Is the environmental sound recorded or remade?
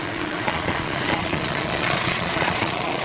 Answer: remade